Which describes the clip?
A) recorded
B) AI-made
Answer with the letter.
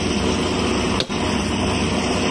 A